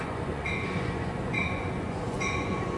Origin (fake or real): fake